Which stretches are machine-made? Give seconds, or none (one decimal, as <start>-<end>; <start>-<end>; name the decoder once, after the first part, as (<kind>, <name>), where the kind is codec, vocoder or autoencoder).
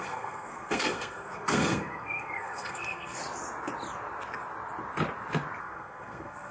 0.0-3.2 (codec, SNAC); 5.6-6.5